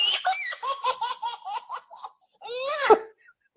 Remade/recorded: recorded